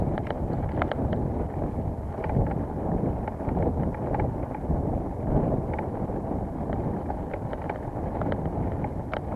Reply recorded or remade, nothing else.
recorded